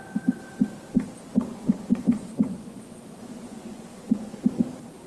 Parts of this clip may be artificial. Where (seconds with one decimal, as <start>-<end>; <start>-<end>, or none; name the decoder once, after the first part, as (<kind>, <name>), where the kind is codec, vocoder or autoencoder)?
1.3-4.4 (vocoder, Vocos)